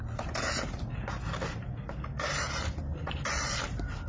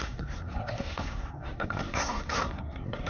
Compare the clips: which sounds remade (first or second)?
second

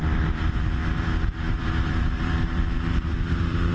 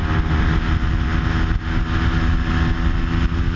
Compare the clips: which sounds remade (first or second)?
first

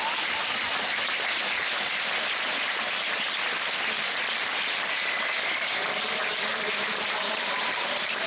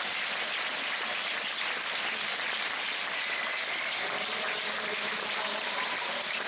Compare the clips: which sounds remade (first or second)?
first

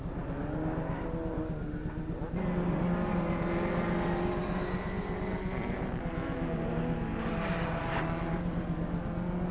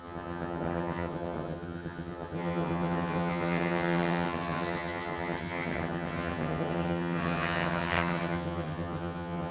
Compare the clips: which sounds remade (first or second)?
second